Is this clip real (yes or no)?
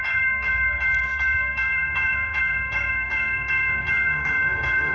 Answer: no